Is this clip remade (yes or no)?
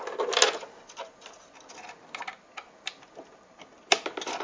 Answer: no